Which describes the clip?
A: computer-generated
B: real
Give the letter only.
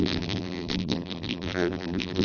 A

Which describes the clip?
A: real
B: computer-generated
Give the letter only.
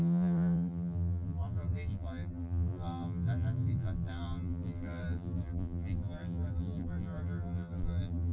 B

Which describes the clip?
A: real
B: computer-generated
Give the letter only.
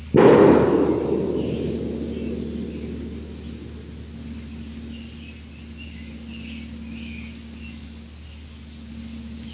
A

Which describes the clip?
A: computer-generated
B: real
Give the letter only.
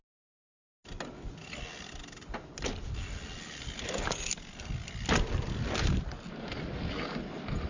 B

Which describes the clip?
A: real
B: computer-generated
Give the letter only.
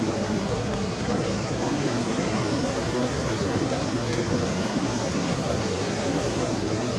B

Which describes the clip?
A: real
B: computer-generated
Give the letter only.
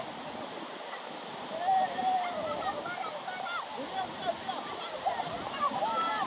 A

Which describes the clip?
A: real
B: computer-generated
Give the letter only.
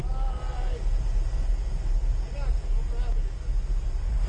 A